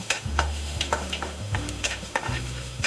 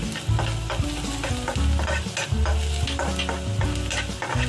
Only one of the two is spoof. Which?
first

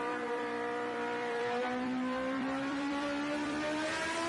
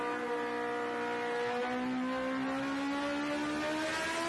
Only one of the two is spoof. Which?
first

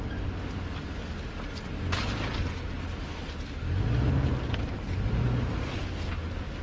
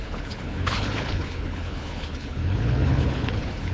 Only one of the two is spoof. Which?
second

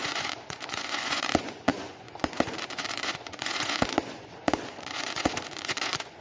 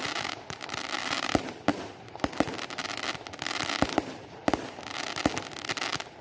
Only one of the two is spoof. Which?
first